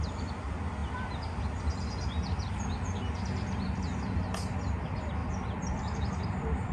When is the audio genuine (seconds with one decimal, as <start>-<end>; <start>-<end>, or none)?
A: 0.0-5.2